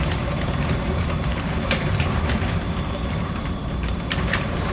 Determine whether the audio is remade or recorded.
remade